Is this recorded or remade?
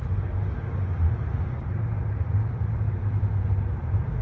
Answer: remade